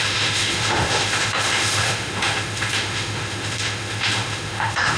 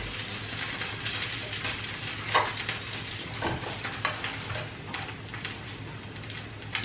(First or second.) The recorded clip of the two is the second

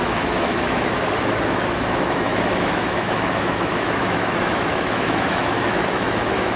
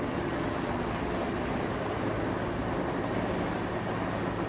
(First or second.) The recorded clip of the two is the second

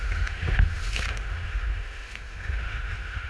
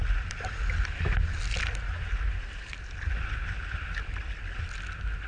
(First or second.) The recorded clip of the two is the second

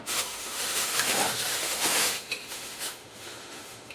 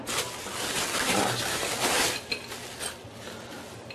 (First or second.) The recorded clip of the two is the second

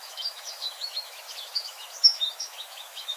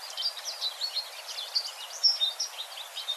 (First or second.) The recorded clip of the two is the second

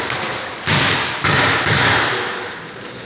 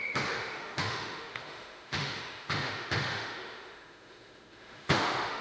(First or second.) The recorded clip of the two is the first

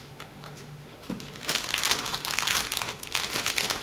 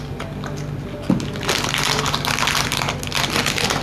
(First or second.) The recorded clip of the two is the second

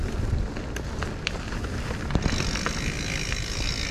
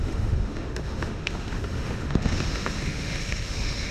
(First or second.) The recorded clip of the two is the first